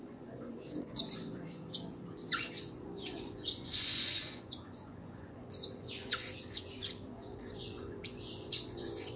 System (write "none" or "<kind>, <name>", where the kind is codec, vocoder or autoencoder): vocoder, Vocos